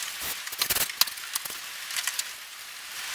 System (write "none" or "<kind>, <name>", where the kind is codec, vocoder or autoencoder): none